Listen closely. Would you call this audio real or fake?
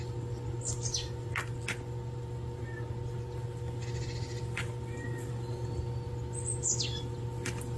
real